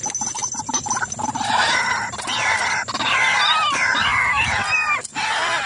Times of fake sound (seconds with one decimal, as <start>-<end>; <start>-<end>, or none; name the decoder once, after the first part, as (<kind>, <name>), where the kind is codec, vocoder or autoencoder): 0.4-2.6 (vocoder, BigVGAN v2); 4.1-4.9